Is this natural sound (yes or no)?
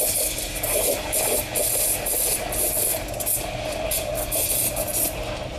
yes